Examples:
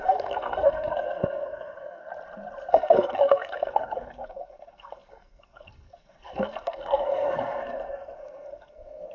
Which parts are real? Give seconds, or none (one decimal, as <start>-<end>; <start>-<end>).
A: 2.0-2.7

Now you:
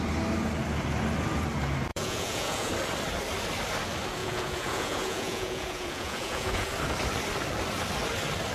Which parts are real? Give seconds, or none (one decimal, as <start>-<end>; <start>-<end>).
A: 0.0-1.9; 2.7-4.2; 6.7-8.5

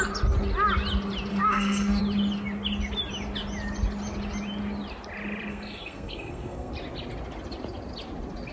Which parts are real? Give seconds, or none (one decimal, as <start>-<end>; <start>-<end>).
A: 0.0-1.3; 2.0-5.5; 6.7-8.5

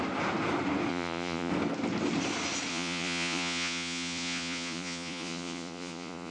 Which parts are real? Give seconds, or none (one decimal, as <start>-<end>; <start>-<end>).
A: 0.0-0.9; 1.5-2.7

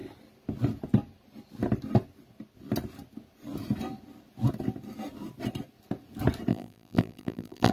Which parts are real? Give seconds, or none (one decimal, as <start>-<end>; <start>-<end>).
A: 0.0-6.5

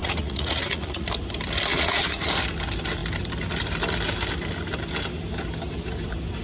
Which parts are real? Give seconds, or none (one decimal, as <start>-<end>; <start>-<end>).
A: 1.1-1.7; 2.3-6.4

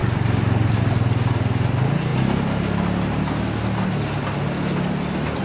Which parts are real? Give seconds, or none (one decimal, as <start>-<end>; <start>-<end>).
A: 0.0-5.4